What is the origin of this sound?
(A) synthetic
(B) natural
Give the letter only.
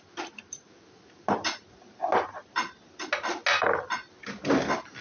B